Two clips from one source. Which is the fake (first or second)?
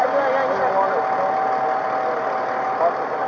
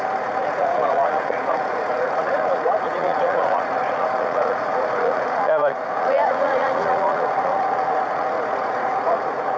second